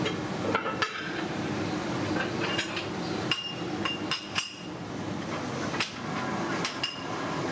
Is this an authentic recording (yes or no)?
yes